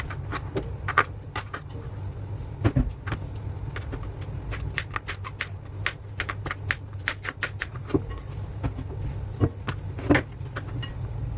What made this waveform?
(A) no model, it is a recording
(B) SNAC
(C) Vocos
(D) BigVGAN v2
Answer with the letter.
A